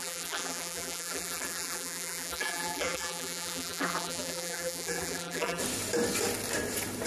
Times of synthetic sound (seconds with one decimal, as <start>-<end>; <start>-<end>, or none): 0.0-5.6